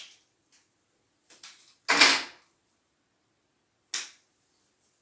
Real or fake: real